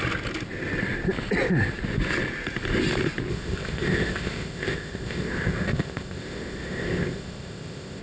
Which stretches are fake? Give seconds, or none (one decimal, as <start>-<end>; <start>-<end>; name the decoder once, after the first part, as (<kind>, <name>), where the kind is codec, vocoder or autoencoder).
3.3-8.0 (codec, ZipCodec)